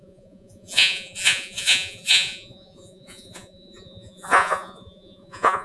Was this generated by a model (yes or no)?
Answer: yes